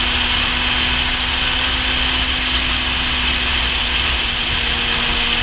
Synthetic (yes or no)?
no